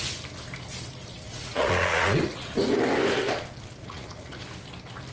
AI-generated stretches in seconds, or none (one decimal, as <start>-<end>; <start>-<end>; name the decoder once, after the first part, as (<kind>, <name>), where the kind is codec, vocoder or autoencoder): 1.2-2.6 (vocoder, Vocos); 3.8-4.4

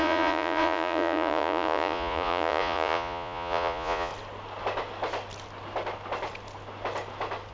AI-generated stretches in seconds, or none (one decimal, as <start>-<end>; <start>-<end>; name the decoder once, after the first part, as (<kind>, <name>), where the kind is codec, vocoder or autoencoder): 0.0-4.1 (vocoder, Vocos)

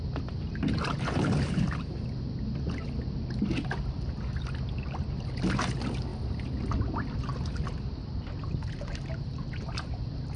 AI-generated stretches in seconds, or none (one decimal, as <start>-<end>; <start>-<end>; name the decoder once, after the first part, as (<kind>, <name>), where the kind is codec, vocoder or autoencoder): none

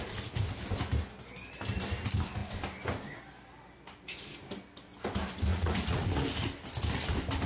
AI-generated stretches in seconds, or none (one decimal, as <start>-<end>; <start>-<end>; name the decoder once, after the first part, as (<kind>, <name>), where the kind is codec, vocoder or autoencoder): 5.5-6.5 (vocoder, Vocos)